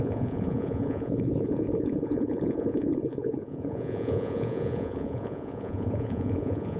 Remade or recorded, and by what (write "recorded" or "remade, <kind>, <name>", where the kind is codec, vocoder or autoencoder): remade, vocoder, Vocos